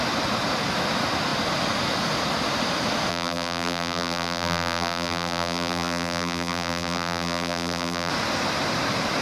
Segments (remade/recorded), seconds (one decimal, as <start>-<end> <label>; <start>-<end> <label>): 0.0-3.1 recorded; 3.1-8.1 remade; 8.1-9.2 recorded